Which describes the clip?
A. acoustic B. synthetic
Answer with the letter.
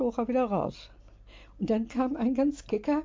A